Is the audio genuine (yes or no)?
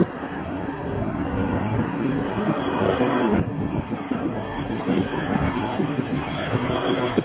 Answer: no